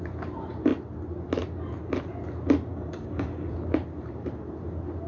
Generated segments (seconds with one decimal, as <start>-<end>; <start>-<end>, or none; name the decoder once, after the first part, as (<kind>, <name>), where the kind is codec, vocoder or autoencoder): 2.7-3.5 (codec, DAC)